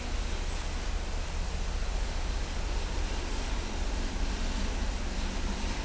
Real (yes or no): yes